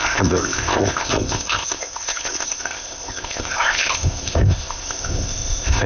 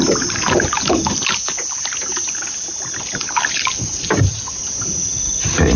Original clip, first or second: second